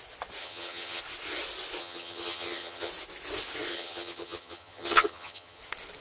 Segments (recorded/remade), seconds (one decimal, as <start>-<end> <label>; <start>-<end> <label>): 0.0-0.4 recorded; 0.4-1.0 remade; 1.0-1.8 recorded; 1.8-2.9 remade; 2.9-3.7 recorded; 3.7-5.6 remade; 5.6-6.0 recorded